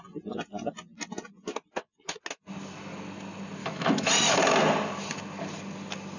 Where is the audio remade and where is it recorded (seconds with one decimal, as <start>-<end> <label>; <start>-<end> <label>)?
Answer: 0.0-3.6 recorded; 3.6-4.1 remade; 4.1-6.2 recorded